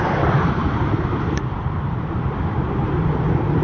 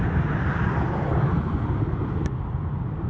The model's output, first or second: first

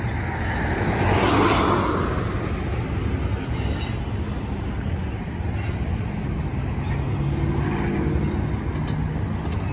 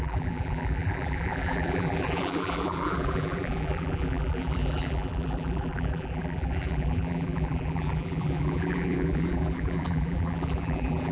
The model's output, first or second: second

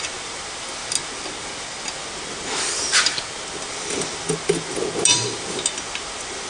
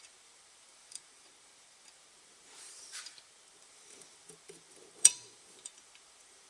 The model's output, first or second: second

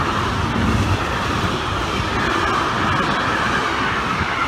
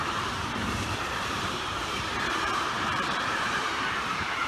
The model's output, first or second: second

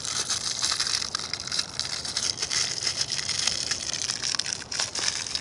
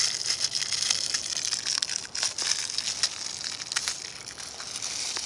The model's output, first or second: first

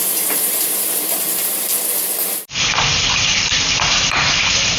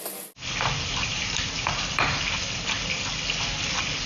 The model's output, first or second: first